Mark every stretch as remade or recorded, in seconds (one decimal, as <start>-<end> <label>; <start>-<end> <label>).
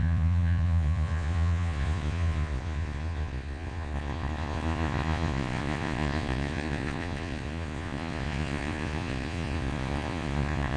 0.0-10.8 remade